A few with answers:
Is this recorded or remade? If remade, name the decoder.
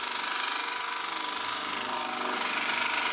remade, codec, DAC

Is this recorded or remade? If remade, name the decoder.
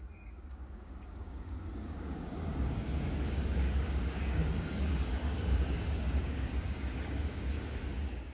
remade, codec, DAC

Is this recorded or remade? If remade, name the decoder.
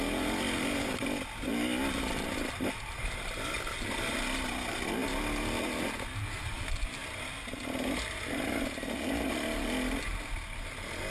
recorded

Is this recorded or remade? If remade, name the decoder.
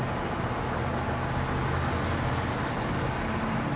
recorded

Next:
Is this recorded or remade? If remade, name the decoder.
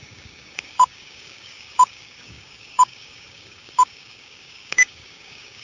remade, codec, DAC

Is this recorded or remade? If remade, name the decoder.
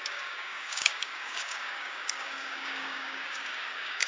remade, codec, DAC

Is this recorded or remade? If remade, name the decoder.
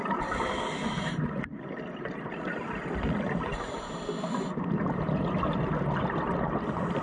recorded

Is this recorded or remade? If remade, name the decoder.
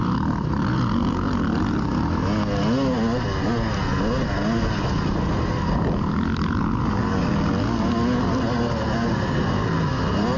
recorded